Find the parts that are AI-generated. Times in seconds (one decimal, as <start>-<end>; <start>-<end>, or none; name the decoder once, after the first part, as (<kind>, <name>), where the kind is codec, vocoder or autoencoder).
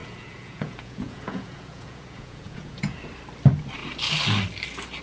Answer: 0.0-3.0 (vocoder, Vocos)